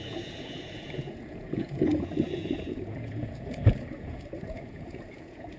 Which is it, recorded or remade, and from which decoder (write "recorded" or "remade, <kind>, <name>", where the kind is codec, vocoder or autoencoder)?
remade, vocoder, Vocos